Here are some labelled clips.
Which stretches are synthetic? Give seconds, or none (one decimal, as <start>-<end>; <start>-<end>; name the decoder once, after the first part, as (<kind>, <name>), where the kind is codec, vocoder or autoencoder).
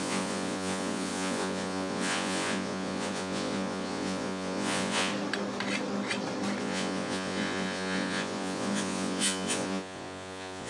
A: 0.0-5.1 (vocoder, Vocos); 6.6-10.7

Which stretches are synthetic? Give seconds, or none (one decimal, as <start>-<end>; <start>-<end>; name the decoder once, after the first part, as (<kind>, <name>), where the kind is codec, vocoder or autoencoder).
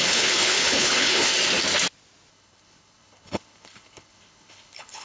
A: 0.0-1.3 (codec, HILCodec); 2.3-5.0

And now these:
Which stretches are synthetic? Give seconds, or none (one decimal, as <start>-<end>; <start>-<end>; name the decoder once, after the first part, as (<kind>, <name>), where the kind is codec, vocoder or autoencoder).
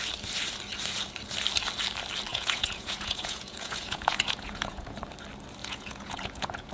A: 2.3-5.0 (vocoder, Vocos); 5.6-6.7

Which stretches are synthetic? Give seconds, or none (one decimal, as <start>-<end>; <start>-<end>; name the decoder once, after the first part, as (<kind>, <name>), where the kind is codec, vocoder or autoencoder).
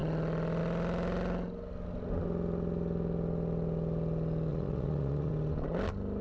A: 4.5-5.3 (vocoder, Vocos)